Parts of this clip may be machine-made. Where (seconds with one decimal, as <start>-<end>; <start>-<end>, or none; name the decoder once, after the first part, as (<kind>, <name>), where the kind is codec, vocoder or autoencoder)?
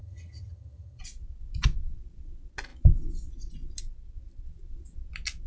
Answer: 0.0-1.0 (vocoder, HiFi-GAN)